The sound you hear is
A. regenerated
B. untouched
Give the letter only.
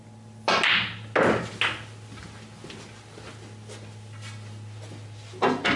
B